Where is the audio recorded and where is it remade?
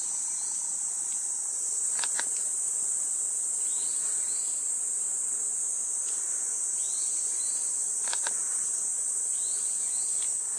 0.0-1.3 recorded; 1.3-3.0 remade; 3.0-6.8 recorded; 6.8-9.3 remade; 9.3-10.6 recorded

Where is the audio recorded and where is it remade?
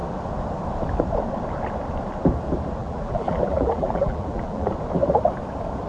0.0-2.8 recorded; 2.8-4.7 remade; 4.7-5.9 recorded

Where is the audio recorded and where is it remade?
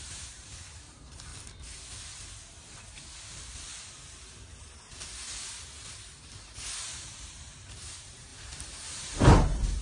0.0-1.3 remade; 1.3-3.3 recorded; 3.3-3.7 remade; 3.7-6.9 recorded; 6.9-9.8 remade